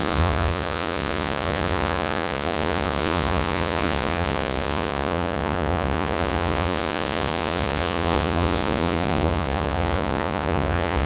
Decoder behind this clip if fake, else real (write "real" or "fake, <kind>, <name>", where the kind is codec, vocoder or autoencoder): fake, vocoder, Vocos